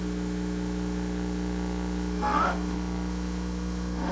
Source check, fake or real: fake